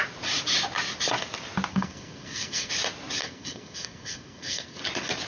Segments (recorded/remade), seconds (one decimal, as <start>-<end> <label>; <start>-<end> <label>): 0.0-1.7 recorded; 1.7-2.7 remade; 2.7-3.2 recorded; 3.2-4.8 remade; 4.8-5.3 recorded